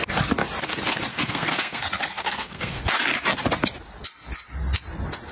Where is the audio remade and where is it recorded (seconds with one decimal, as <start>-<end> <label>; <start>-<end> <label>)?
0.0-1.1 recorded; 1.1-1.8 remade; 1.8-2.2 recorded; 2.2-2.8 remade; 2.8-5.3 recorded